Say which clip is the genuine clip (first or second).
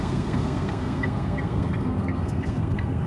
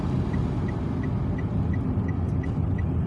second